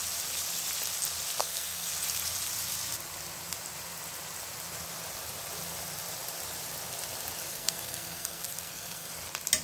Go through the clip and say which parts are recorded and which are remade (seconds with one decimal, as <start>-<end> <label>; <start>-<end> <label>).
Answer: 0.0-1.4 recorded; 1.4-1.9 remade; 1.9-7.5 recorded; 7.5-9.1 remade; 9.1-9.6 recorded

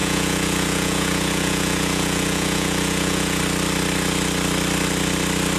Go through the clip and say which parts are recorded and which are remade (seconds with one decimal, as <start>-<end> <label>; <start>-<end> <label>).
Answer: 0.0-3.4 remade; 3.4-5.6 recorded